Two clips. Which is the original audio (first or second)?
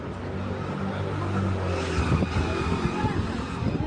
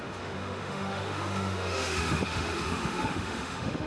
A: first